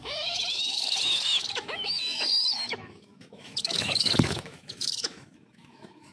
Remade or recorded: remade